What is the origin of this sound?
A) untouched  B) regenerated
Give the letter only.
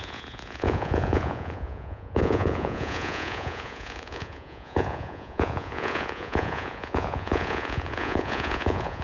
B